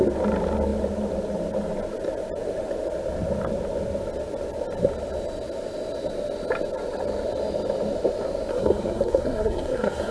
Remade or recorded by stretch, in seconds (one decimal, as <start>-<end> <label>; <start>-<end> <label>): 0.0-8.5 recorded; 8.5-10.1 remade